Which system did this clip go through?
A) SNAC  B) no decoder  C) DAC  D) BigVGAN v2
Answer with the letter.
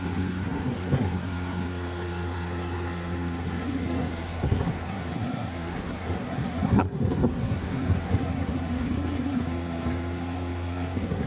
A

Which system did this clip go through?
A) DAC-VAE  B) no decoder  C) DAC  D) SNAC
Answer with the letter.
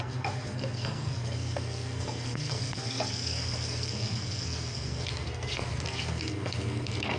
D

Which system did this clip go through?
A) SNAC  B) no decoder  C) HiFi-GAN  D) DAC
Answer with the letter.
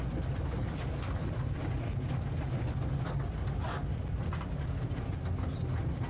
B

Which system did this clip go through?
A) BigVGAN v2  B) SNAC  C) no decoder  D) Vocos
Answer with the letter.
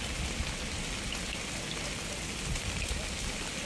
C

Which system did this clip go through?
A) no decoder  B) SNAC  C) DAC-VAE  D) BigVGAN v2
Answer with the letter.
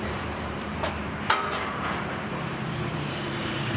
D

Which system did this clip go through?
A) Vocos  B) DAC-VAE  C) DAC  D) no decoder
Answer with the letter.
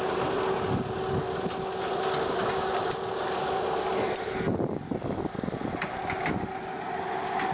D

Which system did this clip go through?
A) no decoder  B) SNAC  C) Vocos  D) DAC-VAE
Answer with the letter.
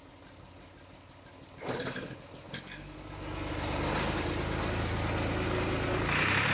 A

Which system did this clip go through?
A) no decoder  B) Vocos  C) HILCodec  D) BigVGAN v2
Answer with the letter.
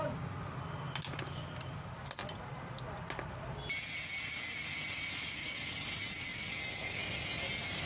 A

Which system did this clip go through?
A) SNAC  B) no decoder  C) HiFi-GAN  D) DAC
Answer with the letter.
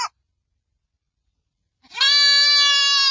B